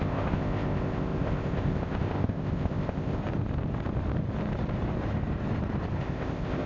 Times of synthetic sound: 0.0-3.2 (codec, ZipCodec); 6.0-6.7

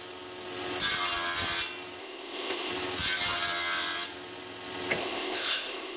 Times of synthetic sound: 2.0-2.7 (codec, ZipCodec); 5.0-6.0

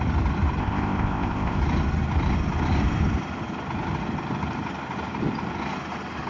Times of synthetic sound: 0.6-1.6 (codec, ZipCodec)

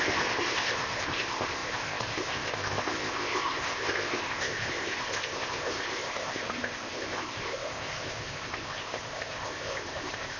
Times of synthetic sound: 0.0-10.4 (codec, ZipCodec)

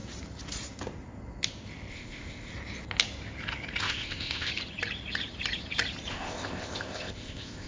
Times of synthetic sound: 1.9-2.5 (codec, ZipCodec); 3.8-4.5; 6.1-7.7